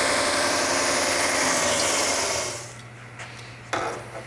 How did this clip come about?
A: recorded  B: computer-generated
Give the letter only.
A